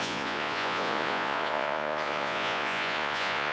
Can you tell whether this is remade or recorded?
remade